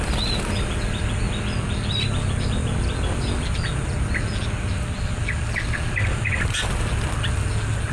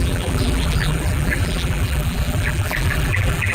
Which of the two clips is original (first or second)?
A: first